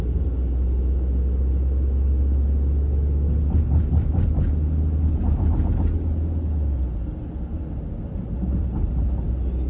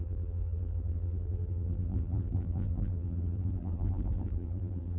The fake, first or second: second